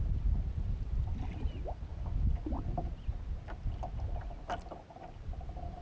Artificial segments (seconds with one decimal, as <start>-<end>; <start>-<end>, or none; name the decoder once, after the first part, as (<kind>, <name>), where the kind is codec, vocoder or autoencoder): none